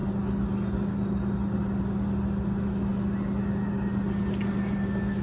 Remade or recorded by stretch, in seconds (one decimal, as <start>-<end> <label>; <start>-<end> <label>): 0.0-5.2 recorded